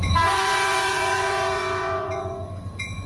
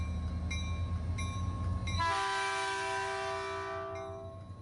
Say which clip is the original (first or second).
second